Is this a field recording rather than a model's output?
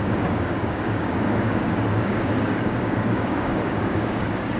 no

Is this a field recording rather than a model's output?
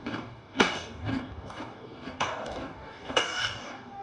no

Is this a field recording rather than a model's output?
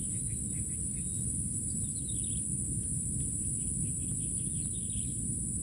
yes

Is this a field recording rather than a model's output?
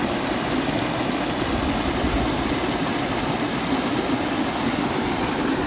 yes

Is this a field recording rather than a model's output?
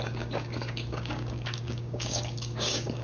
no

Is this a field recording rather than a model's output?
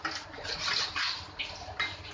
yes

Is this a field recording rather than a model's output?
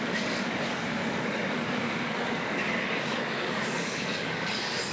no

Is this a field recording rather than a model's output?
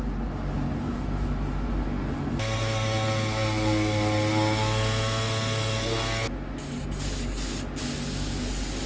yes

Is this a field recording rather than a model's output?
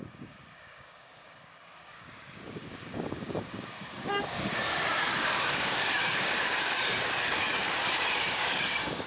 no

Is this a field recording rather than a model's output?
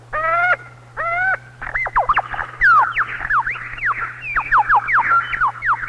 yes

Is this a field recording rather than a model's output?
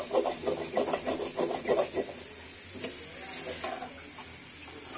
yes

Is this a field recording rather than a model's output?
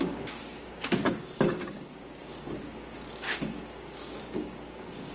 no